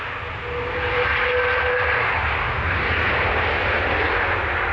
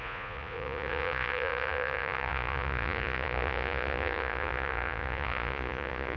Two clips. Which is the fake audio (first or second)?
second